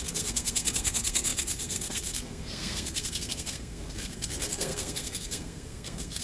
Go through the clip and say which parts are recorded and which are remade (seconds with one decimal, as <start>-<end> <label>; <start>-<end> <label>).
0.0-6.2 remade